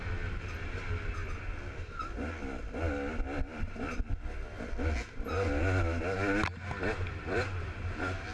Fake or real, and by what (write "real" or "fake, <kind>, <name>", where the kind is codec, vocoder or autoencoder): real